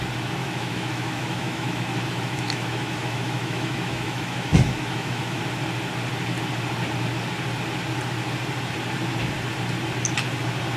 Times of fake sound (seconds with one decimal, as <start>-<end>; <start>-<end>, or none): 0.4-5.4